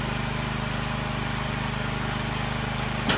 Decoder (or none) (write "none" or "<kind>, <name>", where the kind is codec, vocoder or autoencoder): vocoder, BigVGAN v2